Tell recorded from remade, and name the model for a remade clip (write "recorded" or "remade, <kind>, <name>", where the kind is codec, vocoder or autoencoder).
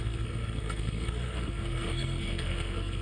remade, codec, SNAC